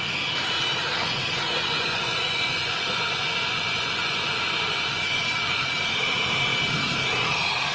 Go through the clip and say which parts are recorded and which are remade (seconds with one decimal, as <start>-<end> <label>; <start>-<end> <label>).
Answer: 0.0-1.0 recorded; 1.0-5.6 remade; 5.6-7.7 recorded

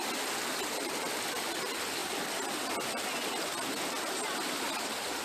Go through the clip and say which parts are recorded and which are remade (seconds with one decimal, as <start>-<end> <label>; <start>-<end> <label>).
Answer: 0.0-5.2 recorded